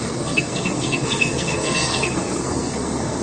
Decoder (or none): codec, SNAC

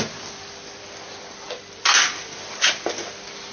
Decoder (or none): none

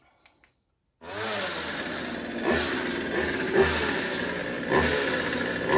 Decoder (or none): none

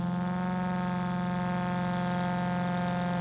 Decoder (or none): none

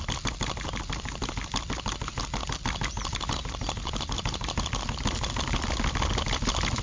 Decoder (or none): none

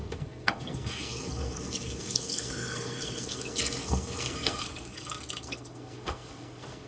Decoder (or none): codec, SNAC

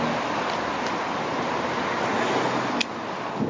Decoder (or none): none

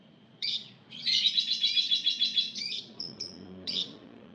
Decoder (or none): vocoder, Vocos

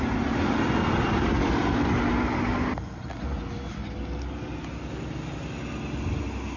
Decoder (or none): none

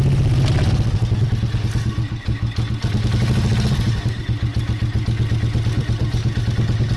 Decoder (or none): none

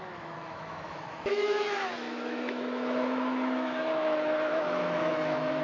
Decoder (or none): autoencoder, DAC-VAE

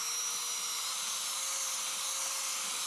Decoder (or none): none